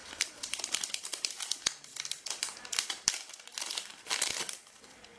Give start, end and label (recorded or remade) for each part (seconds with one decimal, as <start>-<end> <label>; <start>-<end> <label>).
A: 0.0-5.2 remade